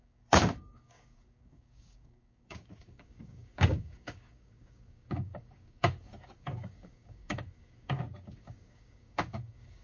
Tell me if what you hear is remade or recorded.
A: remade